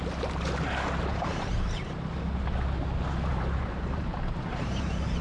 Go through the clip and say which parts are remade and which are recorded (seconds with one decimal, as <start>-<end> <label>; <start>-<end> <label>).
0.0-1.1 recorded; 1.1-2.1 remade; 2.1-3.3 recorded; 3.3-5.2 remade